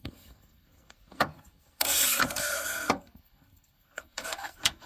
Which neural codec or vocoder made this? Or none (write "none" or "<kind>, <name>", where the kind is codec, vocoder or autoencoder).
codec, SNAC